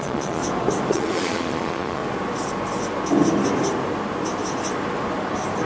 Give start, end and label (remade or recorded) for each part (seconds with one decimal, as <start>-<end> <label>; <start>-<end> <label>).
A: 0.0-0.4 remade; 0.4-0.9 recorded; 0.9-2.0 remade; 2.0-5.7 recorded

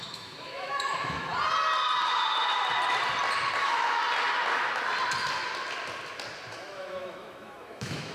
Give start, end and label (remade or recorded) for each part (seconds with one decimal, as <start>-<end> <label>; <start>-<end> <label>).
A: 0.0-1.3 remade; 1.3-3.6 recorded; 3.6-4.0 remade; 4.0-6.5 recorded; 6.5-8.1 remade

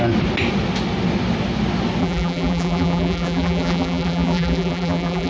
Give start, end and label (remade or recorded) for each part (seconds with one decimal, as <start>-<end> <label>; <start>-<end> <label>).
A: 0.0-2.0 recorded; 2.0-5.3 remade

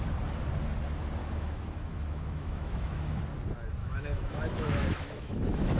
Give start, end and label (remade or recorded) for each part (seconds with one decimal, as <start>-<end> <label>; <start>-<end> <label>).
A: 0.0-1.2 recorded; 1.2-3.2 remade; 3.2-3.8 recorded; 3.8-5.8 remade

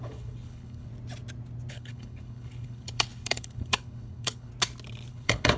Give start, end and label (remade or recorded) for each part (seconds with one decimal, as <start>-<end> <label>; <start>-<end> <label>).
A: 0.0-0.9 remade; 0.9-1.7 recorded; 1.7-4.5 remade; 4.5-5.1 recorded; 5.1-5.6 remade